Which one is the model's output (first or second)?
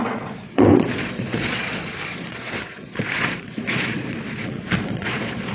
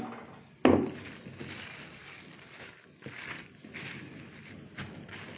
first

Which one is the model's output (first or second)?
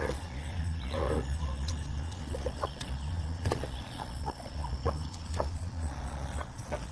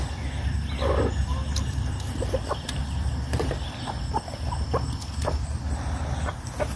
first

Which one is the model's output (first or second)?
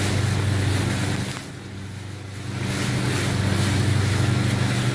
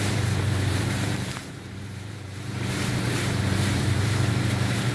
second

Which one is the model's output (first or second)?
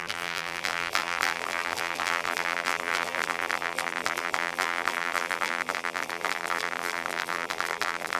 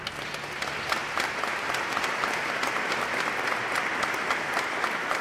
first